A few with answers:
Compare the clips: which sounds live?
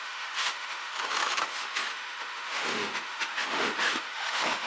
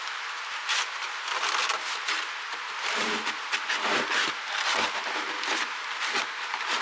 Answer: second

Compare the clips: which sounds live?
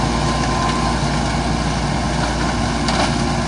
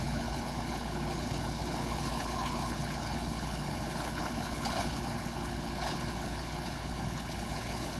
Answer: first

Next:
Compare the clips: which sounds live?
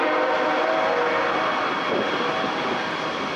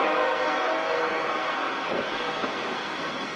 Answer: first